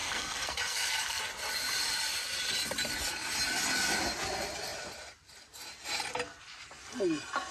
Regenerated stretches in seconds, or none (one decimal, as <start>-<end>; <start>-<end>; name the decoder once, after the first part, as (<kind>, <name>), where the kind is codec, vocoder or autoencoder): 0.0-1.2 (codec, SNAC)